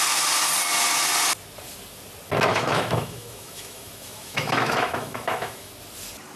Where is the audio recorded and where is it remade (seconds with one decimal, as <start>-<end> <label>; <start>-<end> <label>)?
0.0-2.5 recorded; 2.5-5.7 remade; 5.7-6.4 recorded